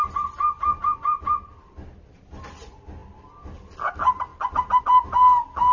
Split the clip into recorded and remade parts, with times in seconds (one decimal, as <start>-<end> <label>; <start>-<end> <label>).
0.0-5.7 recorded